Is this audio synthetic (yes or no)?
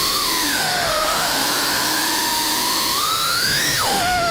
yes